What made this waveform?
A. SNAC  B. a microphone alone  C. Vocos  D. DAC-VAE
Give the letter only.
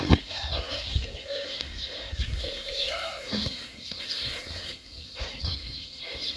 A